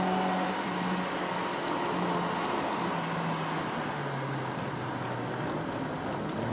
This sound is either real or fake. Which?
real